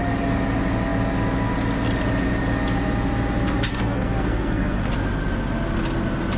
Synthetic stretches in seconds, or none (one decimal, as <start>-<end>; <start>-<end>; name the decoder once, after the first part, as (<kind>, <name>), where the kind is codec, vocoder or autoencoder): 3.7-4.9 (codec, SNAC)